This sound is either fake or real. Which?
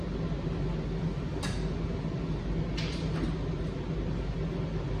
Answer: real